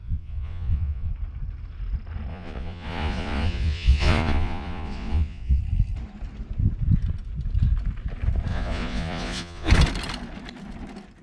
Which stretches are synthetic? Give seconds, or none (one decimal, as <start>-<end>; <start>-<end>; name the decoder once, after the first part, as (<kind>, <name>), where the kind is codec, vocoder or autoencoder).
0.0-1.1 (vocoder, Vocos); 2.3-5.6; 8.5-9.7